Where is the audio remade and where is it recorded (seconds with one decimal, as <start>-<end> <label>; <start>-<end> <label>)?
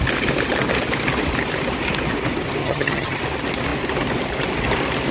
0.0-2.6 recorded; 2.6-3.2 remade; 3.2-5.1 recorded